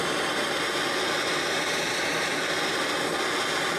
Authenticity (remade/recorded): remade